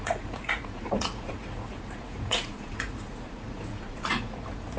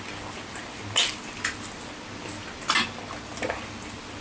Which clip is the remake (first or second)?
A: first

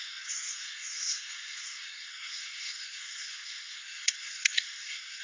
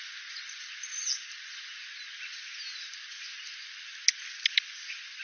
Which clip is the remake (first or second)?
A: first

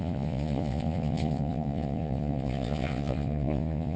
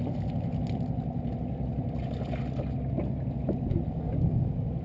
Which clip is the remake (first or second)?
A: first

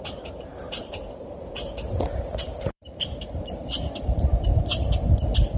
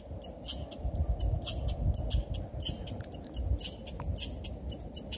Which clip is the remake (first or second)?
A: first